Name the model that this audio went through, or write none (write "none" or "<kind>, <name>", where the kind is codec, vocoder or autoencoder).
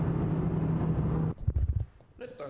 none